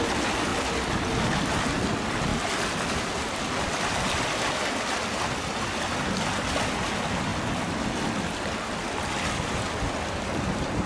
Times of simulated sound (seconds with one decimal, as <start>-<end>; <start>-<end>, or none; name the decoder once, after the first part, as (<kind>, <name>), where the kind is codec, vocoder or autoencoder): none

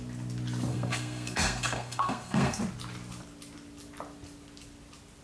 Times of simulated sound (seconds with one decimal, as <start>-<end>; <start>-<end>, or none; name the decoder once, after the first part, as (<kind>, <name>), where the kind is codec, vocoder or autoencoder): 0.7-2.6 (codec, SNAC)

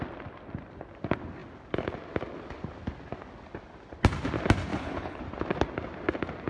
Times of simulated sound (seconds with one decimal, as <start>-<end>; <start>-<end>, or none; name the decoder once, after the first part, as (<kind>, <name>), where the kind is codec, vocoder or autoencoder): 4.7-5.2 (codec, HILCodec)

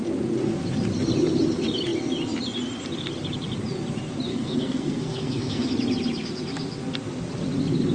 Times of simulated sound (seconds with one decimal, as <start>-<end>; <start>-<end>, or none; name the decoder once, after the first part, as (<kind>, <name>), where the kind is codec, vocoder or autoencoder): 4.3-5.7 (codec, SNAC)

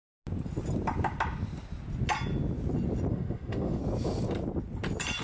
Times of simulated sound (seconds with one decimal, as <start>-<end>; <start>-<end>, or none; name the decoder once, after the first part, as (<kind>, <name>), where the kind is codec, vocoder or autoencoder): 3.1-3.8 (autoencoder, DAC-VAE)

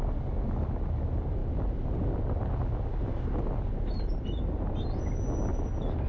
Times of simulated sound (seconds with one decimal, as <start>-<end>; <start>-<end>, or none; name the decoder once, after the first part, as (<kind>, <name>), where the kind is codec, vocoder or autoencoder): none

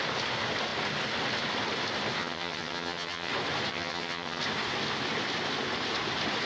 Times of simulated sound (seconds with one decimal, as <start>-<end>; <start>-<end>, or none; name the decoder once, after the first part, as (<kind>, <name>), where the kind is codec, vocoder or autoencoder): 2.2-3.3 (vocoder, HiFi-GAN); 3.7-4.4

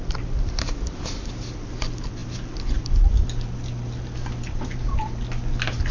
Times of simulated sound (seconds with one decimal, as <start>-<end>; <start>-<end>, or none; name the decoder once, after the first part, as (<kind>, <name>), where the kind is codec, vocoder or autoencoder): none